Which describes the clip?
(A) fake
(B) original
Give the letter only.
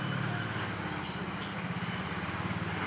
B